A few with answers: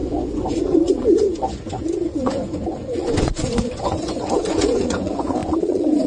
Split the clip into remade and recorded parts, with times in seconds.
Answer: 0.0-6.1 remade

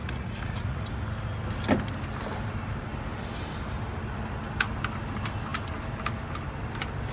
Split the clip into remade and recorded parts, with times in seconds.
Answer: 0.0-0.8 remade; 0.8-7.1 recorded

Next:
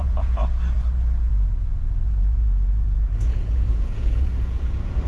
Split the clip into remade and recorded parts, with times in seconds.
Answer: 0.0-0.4 remade; 0.4-1.3 recorded; 1.3-5.1 remade

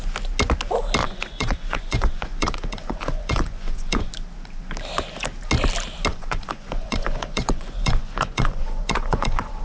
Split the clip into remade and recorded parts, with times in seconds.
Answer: 0.0-1.0 recorded; 1.0-4.1 remade; 4.1-6.1 recorded; 6.1-9.6 remade

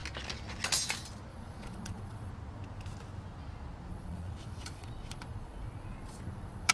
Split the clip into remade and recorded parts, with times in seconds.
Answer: 0.0-1.3 recorded; 1.3-2.3 remade; 2.3-3.9 recorded; 3.9-6.7 remade

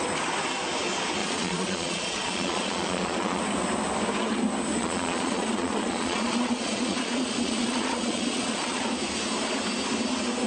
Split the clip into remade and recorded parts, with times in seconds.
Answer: 0.0-1.2 recorded; 1.2-3.4 remade; 3.4-4.8 recorded; 4.8-8.8 remade; 8.8-10.5 recorded

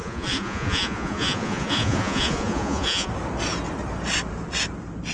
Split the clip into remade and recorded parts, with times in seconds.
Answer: 0.0-3.1 remade; 3.1-5.1 recorded